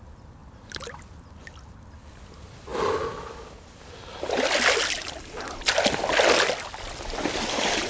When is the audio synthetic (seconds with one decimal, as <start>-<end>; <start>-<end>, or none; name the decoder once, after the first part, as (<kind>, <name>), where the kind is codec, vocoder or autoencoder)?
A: 0.0-0.4 (vocoder, BigVGAN v2); 2.3-2.7; 3.4-4.0; 7.5-7.9